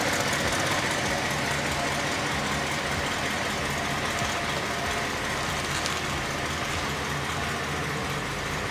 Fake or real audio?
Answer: real